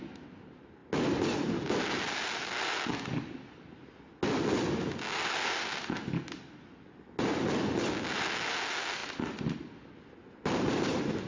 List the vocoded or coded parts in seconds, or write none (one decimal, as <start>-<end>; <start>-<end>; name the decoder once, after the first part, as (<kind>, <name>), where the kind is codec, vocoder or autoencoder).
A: none